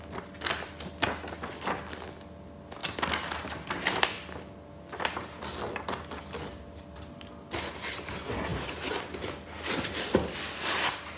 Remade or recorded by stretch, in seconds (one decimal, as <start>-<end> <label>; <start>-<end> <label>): 0.0-11.2 recorded